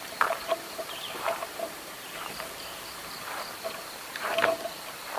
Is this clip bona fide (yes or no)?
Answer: no